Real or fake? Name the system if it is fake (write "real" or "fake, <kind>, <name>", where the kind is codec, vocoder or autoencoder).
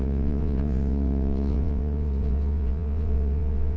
fake, vocoder, WaveNeXt